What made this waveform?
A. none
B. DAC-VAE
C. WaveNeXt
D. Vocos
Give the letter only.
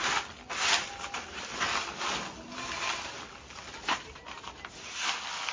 A